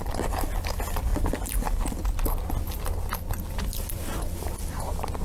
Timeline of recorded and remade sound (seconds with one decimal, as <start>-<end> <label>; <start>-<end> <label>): 0.0-5.2 recorded